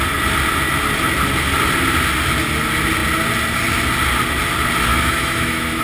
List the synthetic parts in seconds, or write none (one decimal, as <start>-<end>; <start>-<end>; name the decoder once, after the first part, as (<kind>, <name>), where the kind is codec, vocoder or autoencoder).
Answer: 4.9-5.8 (autoencoder, DAC-VAE)